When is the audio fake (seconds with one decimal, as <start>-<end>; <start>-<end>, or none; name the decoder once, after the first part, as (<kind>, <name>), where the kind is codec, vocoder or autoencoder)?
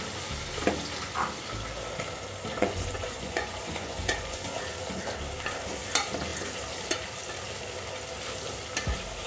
2.5-4.6 (vocoder, Vocos)